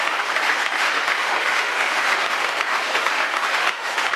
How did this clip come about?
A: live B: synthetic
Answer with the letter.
B